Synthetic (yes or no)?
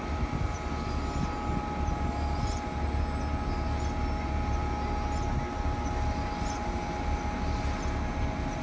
no